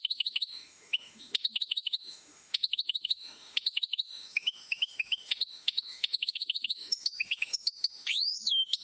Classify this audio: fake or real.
fake